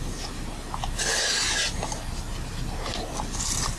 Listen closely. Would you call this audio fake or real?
real